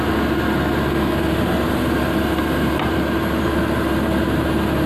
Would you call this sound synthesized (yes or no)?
no